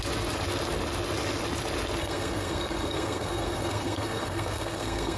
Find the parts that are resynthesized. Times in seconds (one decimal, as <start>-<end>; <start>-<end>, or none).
2.0-5.2